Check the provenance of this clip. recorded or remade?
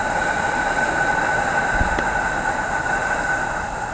recorded